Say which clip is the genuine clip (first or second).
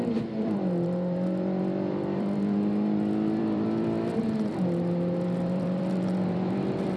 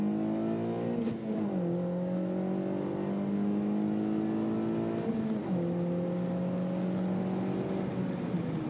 second